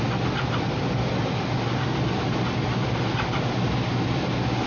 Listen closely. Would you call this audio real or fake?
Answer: real